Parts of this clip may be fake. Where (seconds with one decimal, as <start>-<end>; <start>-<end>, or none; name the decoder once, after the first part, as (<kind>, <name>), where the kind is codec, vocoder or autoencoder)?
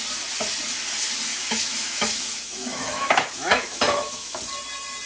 1.3-4.4 (autoencoder, DAC-VAE)